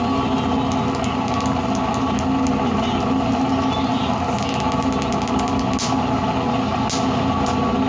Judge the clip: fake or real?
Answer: real